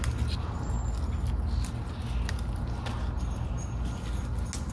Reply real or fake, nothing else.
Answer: real